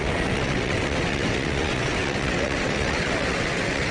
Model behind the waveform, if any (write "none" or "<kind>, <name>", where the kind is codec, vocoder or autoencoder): vocoder, WaveNeXt